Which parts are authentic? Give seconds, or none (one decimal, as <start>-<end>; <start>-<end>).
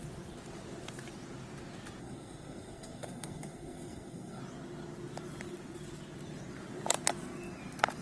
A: 0.0-2.0; 4.4-8.0